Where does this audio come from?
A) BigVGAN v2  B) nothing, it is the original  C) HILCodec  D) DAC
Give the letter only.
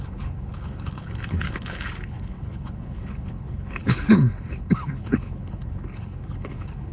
C